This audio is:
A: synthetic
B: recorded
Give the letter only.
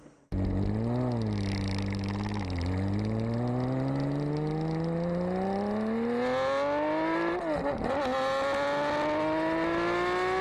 B